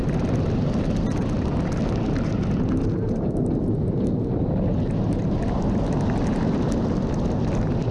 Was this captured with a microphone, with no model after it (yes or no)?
yes